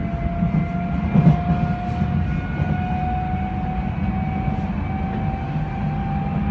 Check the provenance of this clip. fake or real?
real